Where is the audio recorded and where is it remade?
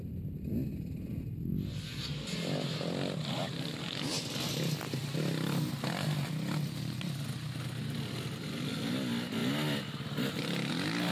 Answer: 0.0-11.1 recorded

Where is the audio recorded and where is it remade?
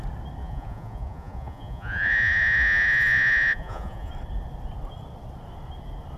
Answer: 0.0-0.4 recorded; 0.4-4.1 remade; 4.1-6.2 recorded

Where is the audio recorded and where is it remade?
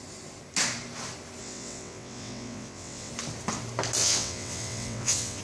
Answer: 0.0-1.4 recorded; 1.4-3.1 remade; 3.1-4.0 recorded; 4.0-5.4 remade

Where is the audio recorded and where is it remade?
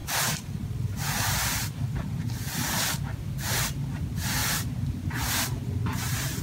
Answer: 0.0-6.4 recorded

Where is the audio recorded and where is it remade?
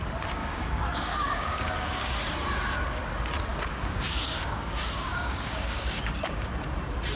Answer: 0.0-0.4 recorded; 0.4-2.1 remade; 2.1-3.5 recorded; 3.5-6.5 remade; 6.5-7.2 recorded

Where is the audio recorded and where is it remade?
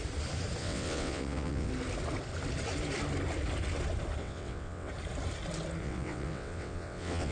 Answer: 0.0-0.6 recorded; 0.6-1.7 remade; 1.7-4.2 recorded; 4.2-4.9 remade; 4.9-5.8 recorded; 5.8-7.3 remade